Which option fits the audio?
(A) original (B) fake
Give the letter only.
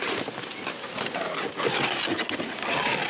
A